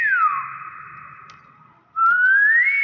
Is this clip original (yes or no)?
yes